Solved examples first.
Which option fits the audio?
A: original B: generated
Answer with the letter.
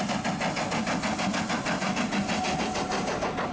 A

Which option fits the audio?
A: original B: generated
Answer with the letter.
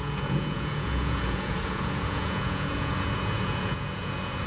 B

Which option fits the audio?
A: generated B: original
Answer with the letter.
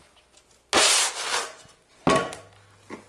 B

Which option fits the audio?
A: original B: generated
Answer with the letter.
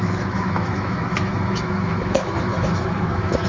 B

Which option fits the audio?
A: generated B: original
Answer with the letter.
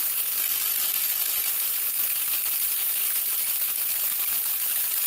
B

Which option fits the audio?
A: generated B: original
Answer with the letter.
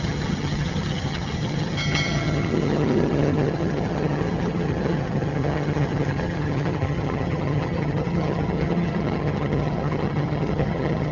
A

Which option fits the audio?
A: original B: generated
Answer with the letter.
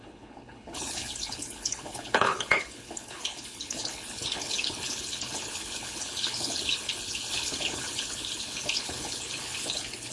B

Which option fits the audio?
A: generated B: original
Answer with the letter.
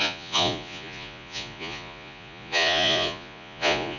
A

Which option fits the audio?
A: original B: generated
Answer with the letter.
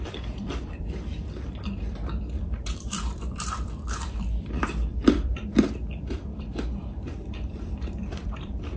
B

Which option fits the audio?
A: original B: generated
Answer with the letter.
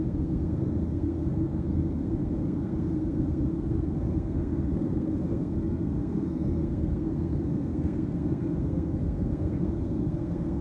B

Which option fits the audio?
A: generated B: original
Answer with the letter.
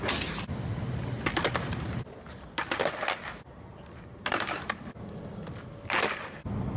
B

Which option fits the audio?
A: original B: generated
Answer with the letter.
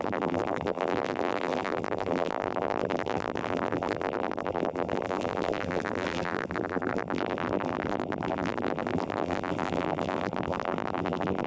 B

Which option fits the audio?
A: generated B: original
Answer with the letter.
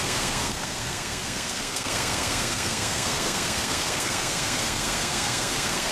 A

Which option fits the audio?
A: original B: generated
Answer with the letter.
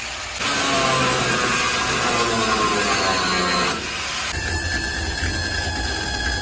A